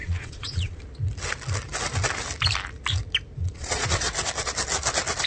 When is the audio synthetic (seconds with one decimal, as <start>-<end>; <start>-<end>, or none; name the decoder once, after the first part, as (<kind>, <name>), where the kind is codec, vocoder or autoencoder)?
0.0-0.8 (vocoder, Vocos); 3.4-4.1